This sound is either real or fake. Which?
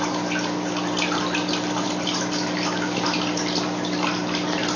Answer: real